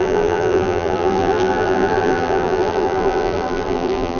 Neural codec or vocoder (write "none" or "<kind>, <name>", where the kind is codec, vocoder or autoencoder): vocoder, BigVGAN v2